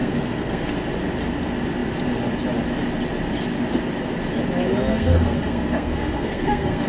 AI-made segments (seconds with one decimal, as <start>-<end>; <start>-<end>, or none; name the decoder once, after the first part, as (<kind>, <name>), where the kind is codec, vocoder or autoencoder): 0.0-0.7 (codec, SNAC); 4.9-6.9